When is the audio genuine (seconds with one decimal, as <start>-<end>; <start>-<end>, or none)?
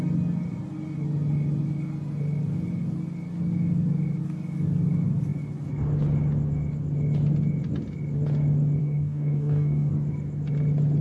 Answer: 0.0-8.8; 9.9-11.0